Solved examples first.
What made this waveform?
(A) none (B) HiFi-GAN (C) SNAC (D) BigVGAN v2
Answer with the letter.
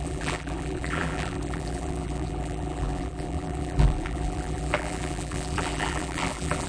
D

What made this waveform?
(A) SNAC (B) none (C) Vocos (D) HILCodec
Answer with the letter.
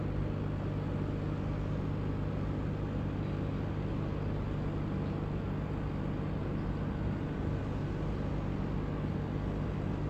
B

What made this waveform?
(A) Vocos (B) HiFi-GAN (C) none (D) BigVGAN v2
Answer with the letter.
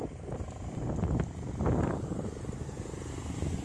C